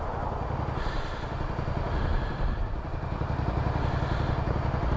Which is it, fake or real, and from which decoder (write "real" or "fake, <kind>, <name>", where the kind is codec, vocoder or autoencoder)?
real